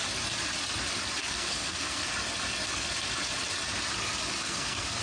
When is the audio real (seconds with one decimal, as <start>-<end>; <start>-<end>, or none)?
0.0-1.2; 2.1-4.4